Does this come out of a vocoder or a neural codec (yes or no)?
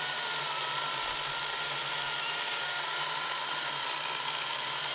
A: no